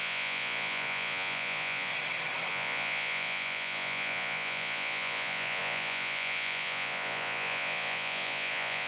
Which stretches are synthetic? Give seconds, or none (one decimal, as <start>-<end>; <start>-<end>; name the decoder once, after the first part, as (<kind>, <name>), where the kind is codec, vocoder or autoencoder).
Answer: 0.0-1.9 (vocoder, Vocos); 2.5-8.9